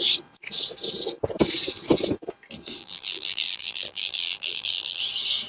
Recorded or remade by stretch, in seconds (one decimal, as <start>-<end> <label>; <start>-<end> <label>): 0.0-2.8 recorded; 2.8-5.0 remade; 5.0-5.5 recorded